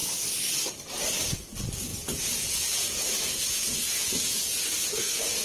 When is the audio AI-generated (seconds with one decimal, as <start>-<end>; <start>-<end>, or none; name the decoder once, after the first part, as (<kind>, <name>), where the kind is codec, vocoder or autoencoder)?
1.9-5.4 (vocoder, Vocos)